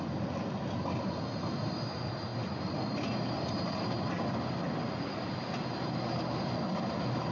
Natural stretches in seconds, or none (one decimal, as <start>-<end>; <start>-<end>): 0.0-7.3